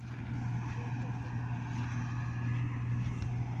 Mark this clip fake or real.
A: real